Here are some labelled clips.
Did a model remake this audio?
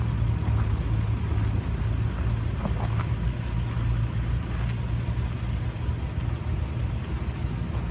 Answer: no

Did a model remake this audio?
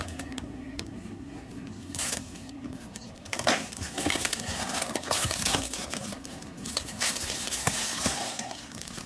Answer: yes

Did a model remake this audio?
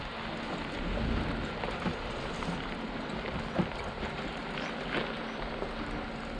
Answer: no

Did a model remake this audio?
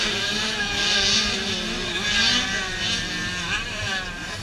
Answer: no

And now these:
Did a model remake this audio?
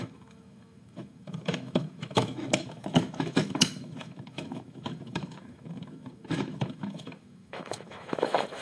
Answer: yes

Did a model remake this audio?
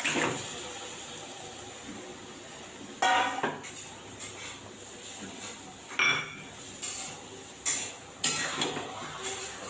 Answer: no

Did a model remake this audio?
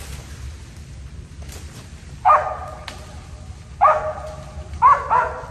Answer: no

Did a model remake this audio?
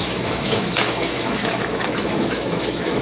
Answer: yes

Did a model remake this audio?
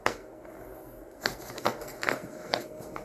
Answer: yes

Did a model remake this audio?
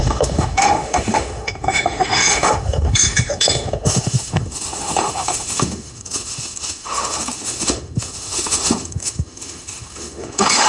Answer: yes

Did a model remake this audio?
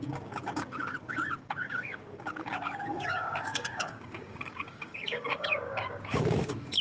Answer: yes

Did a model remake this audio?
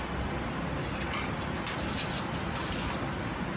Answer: no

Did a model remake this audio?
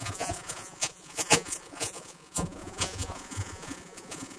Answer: yes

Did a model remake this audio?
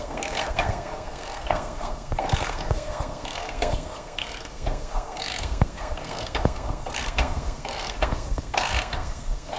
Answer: yes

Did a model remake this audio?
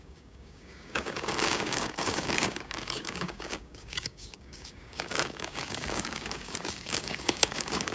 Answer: yes